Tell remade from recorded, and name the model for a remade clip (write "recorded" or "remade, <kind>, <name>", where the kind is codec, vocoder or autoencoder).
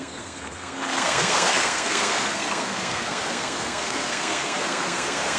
remade, codec, SNAC